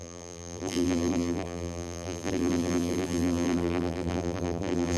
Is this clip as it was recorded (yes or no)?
no